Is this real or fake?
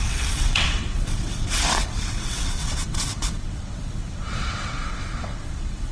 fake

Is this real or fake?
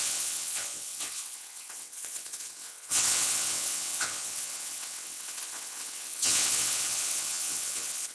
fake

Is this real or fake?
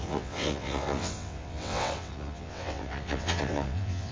fake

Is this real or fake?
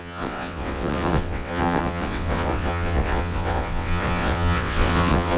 fake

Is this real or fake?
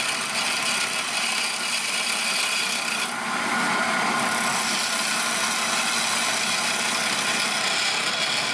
real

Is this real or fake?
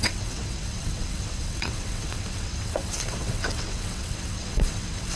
fake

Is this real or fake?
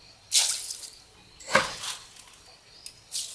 real